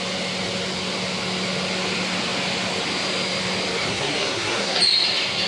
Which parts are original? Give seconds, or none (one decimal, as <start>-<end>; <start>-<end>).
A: 0.0-3.9; 4.8-5.5